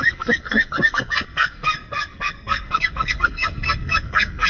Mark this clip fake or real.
fake